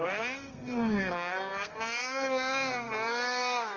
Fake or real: fake